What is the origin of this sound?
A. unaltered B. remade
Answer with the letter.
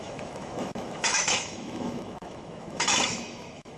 B